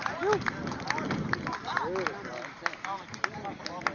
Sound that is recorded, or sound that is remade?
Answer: recorded